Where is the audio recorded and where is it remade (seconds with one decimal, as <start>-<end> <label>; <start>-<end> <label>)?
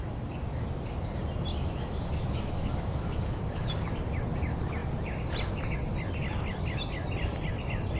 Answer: 0.0-1.5 recorded; 1.5-3.8 remade; 3.8-8.0 recorded